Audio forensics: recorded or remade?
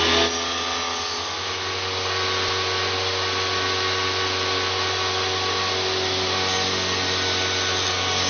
recorded